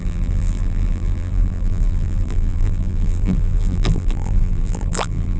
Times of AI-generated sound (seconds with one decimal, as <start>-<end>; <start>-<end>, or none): 0.0-5.4